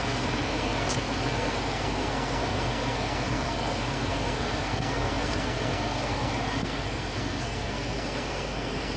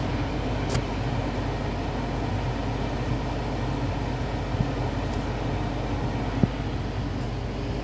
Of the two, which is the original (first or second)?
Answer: second